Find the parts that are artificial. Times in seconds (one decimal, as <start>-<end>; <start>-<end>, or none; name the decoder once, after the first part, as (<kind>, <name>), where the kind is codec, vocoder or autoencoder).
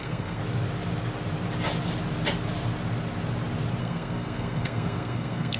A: 0.0-0.4 (codec, SNAC); 3.8-5.6